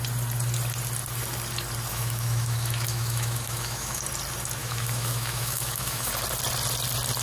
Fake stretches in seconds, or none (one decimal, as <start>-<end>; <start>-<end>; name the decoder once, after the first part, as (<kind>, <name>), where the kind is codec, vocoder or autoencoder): 1.9-4.0 (autoencoder, DAC-VAE); 4.6-6.1